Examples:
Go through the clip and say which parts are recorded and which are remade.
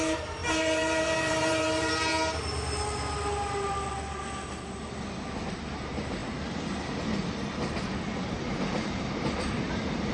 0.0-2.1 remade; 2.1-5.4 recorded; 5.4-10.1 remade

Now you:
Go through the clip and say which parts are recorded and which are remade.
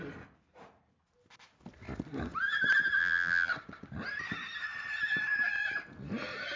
0.0-3.0 recorded; 3.0-3.5 remade; 3.5-6.6 recorded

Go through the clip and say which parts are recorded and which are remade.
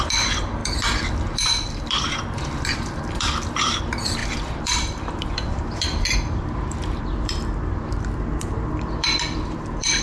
0.0-10.0 remade